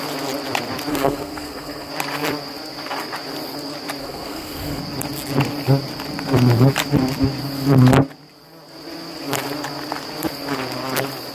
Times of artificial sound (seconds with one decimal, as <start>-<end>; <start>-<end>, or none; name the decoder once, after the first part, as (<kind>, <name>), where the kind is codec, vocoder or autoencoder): 0.9-1.9 (codec, SNAC); 4.0-4.8

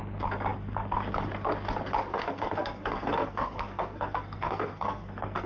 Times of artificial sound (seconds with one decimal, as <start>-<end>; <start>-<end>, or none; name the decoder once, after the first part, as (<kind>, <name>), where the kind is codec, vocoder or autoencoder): 2.1-5.5 (codec, SNAC)

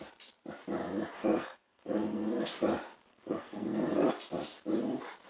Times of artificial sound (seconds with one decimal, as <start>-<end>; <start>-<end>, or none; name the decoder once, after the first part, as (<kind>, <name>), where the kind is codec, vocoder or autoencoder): 1.2-2.4 (codec, SNAC); 3.1-4.1

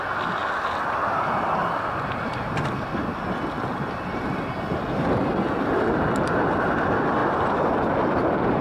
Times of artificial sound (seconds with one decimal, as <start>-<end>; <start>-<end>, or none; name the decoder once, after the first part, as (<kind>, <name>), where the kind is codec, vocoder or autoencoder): none

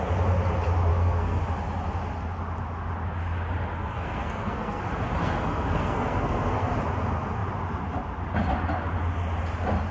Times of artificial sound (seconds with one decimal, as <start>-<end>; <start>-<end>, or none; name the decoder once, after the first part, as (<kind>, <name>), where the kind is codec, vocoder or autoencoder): 0.9-1.4 (codec, SNAC); 3.8-4.8; 5.2-6.7

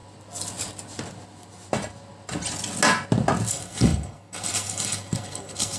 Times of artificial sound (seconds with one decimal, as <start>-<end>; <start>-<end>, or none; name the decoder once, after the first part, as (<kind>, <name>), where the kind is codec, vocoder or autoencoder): 3.5-5.8 (codec, SNAC)